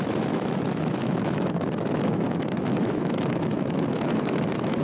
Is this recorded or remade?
remade